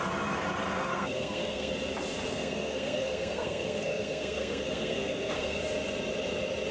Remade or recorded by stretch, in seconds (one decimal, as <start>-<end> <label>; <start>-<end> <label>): 0.0-0.9 recorded; 0.9-1.7 remade; 1.7-2.3 recorded; 2.3-5.6 remade; 5.6-6.7 recorded